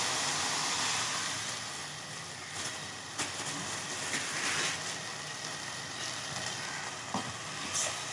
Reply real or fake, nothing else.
real